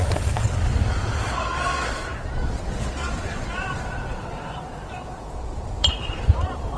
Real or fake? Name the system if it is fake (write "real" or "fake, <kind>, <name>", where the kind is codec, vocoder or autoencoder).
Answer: fake, vocoder, Vocos